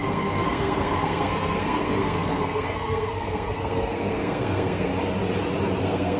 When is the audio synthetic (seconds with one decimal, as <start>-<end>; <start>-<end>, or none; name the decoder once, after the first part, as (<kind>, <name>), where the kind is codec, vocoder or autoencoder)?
0.0-4.9 (codec, SNAC); 5.8-6.2